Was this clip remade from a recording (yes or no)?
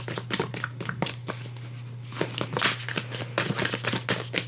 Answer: no